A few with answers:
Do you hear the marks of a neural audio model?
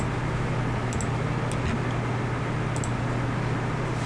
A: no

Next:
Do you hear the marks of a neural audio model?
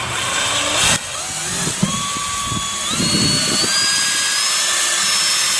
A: no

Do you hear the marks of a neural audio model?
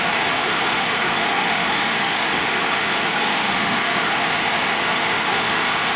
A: yes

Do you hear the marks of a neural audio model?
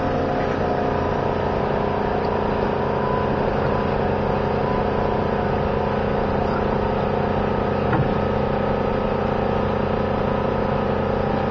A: no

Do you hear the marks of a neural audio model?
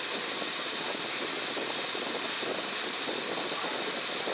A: no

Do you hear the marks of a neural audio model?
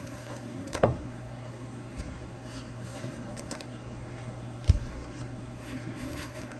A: yes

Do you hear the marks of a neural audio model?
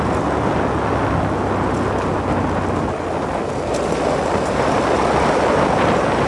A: no